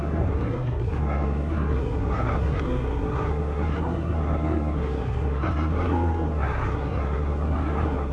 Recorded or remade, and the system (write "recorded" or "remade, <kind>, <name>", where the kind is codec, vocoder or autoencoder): remade, codec, SNAC